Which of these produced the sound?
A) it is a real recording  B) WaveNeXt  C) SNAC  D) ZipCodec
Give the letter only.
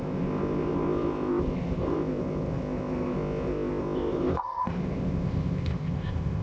D